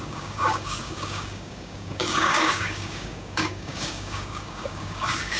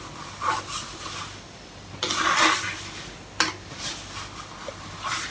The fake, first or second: first